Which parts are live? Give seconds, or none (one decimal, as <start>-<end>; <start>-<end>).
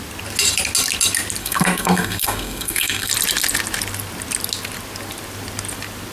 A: 0.0-1.4; 3.1-6.1